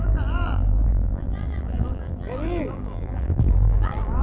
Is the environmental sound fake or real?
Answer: fake